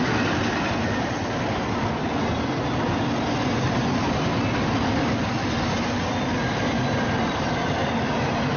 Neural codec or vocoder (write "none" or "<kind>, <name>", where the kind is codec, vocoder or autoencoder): none